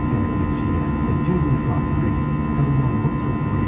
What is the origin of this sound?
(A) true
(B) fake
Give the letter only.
A